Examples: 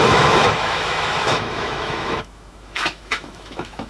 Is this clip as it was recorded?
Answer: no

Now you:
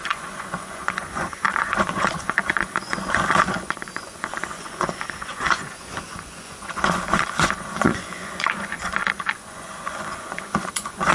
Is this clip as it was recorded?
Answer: no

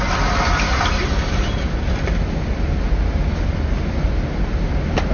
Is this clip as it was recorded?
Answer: yes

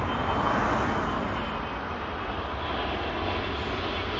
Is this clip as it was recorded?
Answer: yes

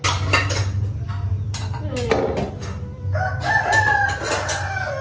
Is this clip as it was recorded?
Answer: yes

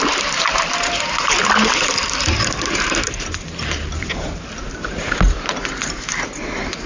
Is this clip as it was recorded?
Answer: no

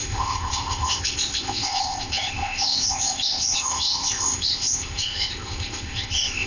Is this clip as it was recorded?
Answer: no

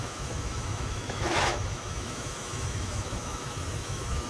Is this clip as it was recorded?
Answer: no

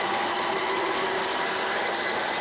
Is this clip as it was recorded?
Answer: yes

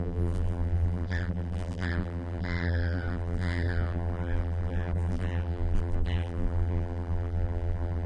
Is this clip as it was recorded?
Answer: no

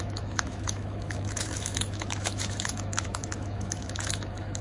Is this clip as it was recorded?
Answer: no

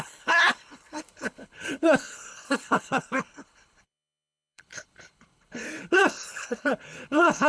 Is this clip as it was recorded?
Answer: no